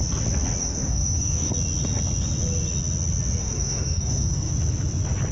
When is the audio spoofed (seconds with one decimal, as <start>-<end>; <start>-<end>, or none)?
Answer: 0.6-1.5; 3.4-4.5

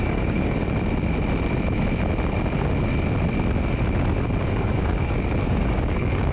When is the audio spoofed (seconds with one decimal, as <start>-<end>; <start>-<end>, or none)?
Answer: 0.0-0.6; 4.4-6.3